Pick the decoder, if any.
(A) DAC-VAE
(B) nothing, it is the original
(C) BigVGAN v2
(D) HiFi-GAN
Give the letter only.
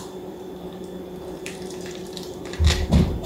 C